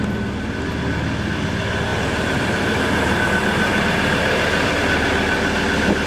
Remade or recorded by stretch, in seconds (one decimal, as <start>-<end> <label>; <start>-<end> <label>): 0.0-1.9 recorded; 1.9-4.7 remade; 4.7-6.1 recorded